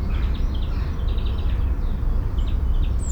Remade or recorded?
recorded